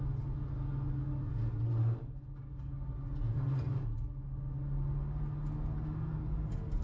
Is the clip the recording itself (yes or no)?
yes